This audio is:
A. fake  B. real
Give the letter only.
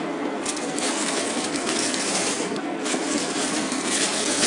A